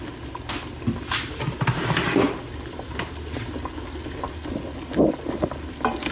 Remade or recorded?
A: recorded